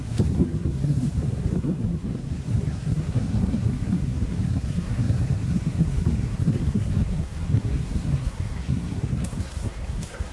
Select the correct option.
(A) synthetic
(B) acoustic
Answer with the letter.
A